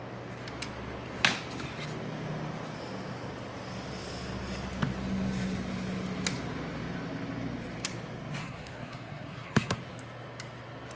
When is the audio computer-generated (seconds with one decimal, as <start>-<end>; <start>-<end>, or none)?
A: 8.4-9.8